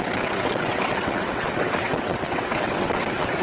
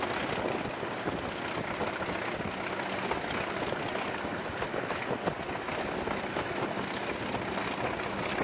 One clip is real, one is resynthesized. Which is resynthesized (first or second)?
first